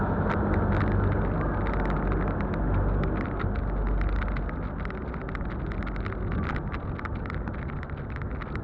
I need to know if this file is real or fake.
real